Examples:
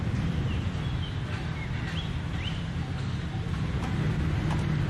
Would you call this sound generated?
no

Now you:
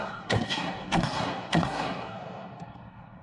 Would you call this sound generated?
yes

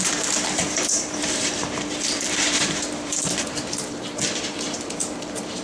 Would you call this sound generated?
yes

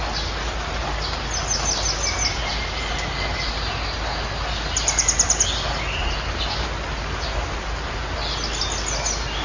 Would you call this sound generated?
no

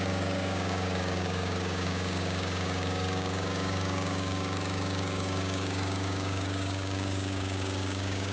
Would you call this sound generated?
yes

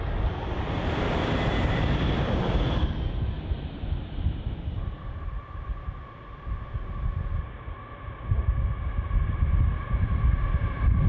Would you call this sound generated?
no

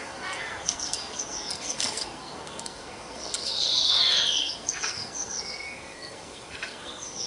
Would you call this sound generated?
yes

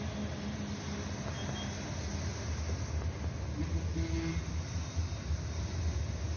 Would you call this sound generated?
no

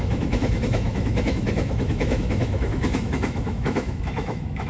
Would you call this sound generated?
yes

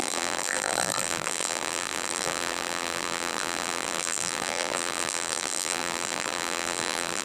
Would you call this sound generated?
yes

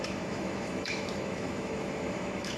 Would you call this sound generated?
yes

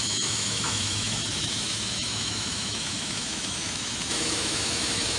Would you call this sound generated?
yes